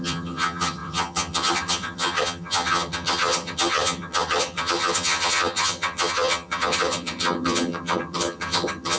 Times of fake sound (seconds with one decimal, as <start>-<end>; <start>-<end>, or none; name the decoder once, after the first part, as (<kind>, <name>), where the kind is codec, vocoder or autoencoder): 0.0-9.0 (vocoder, HiFi-GAN)